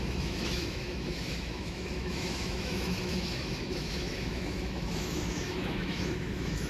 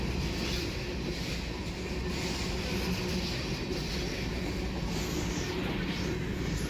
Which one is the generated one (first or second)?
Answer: first